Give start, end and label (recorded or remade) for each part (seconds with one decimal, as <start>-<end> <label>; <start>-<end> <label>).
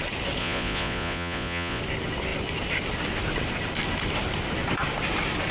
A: 0.0-0.4 recorded; 0.4-1.8 remade; 1.8-5.5 recorded